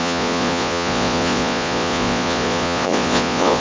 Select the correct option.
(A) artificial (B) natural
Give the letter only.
A